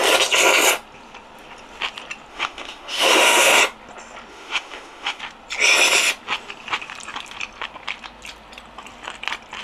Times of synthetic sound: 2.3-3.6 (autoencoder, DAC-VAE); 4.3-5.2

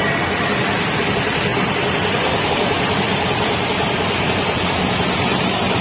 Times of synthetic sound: 1.5-2.5 (vocoder, BigVGAN v2); 5.3-5.8

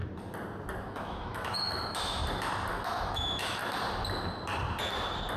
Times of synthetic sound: 0.8-2.2 (autoencoder, DAC-VAE); 2.7-3.6

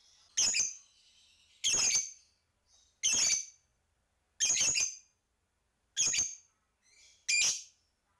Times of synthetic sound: none

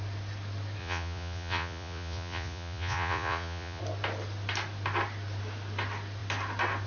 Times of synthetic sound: 0.8-3.8 (vocoder, Vocos)